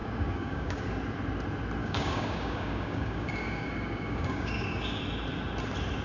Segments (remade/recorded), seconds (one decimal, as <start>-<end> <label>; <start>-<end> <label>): 0.0-0.8 remade; 0.8-1.8 recorded; 1.8-5.0 remade; 5.0-6.0 recorded

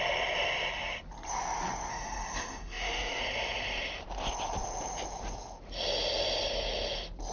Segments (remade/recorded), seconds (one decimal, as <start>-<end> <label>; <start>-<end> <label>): 0.0-1.9 recorded; 1.9-3.2 remade; 3.2-7.3 recorded

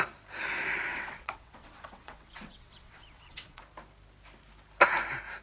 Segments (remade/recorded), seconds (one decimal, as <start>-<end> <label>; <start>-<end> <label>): 0.0-0.9 recorded; 0.9-3.6 remade; 3.6-5.4 recorded

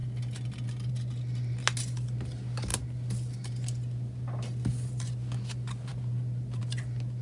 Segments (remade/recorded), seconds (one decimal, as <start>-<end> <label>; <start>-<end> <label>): 0.0-7.2 recorded

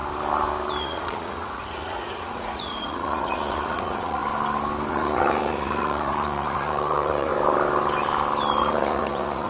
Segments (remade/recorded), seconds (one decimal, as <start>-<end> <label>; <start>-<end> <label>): 0.0-0.8 recorded; 0.8-4.2 remade; 4.2-4.9 recorded; 4.9-7.3 remade; 7.3-8.6 recorded; 8.6-9.5 remade